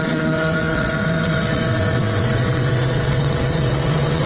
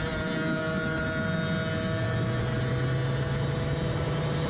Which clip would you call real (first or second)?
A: second